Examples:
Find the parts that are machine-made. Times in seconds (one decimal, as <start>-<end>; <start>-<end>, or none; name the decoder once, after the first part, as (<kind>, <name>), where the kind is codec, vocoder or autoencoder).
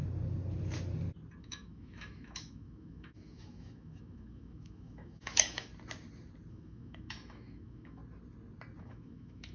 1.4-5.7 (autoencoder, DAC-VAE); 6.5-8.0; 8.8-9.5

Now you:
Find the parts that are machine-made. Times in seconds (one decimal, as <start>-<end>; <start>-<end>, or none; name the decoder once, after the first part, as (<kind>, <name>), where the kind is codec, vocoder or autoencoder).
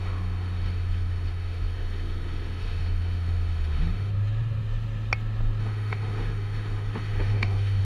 0.0-4.1 (autoencoder, DAC-VAE); 5.6-7.8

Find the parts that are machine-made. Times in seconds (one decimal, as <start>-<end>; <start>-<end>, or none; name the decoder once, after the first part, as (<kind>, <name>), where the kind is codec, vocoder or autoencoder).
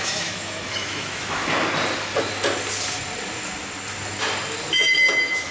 0.0-1.4 (autoencoder, DAC-VAE); 4.7-5.5